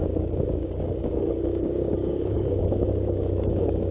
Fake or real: fake